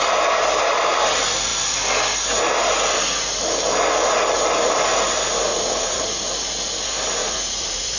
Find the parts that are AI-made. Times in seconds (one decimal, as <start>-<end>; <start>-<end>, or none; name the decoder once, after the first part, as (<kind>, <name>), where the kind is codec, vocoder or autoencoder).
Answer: 5.5-6.0 (vocoder, Vocos); 7.2-8.0